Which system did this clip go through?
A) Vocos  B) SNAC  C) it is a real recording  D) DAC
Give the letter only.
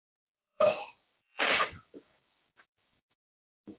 D